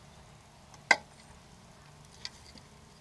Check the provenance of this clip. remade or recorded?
recorded